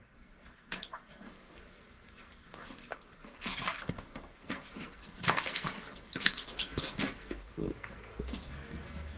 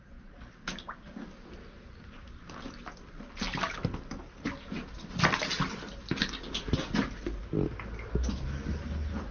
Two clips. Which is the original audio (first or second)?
second